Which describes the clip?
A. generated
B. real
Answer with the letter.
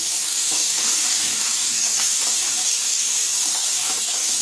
A